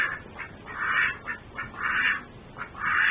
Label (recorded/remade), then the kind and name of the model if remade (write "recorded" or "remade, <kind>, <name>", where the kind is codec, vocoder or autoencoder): recorded